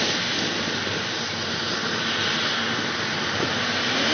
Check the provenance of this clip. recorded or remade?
recorded